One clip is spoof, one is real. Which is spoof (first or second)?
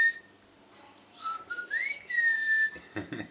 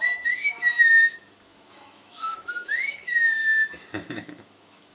second